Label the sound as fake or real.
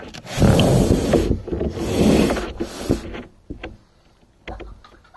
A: real